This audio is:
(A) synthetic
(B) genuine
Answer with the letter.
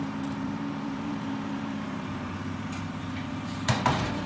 A